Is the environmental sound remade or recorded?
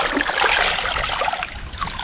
recorded